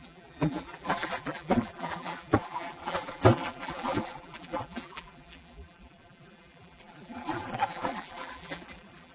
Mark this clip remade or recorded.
remade